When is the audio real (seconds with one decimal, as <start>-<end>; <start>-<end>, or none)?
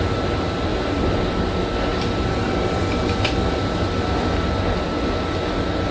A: 0.0-0.7; 1.4-5.9